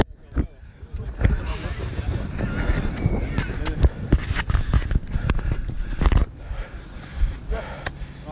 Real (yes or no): yes